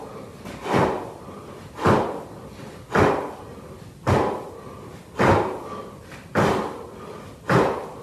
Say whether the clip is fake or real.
real